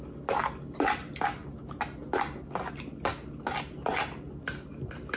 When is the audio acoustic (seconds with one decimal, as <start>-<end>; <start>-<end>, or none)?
0.0-5.2